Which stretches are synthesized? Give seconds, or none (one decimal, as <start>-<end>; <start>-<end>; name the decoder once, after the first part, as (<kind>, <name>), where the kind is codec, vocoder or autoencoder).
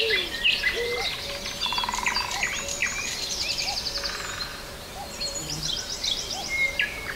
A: 2.8-3.3 (vocoder, BigVGAN v2); 4.5-7.2